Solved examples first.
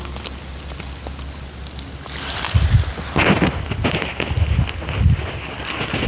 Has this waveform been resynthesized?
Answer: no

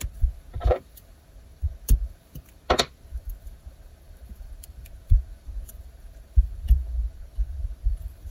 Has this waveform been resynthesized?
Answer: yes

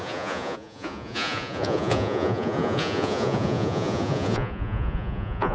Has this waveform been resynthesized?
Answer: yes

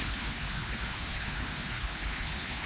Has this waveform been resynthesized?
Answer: yes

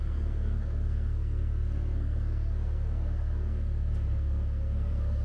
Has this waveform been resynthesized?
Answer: yes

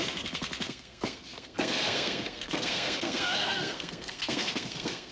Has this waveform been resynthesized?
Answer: yes